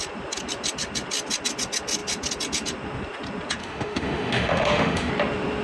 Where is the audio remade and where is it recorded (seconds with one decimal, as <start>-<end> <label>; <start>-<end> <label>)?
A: 0.0-3.6 recorded; 3.6-5.1 remade; 5.1-5.6 recorded